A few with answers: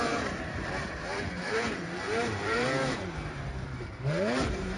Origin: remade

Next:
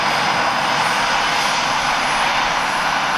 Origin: recorded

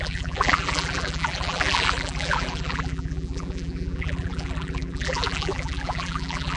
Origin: remade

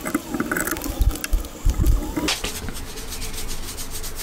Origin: recorded